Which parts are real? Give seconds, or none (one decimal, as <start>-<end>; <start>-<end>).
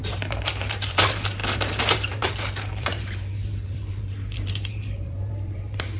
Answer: none